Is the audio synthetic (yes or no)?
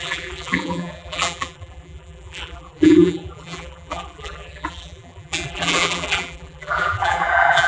yes